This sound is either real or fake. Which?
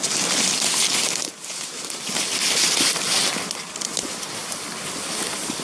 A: real